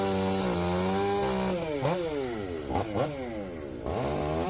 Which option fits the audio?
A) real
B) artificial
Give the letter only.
A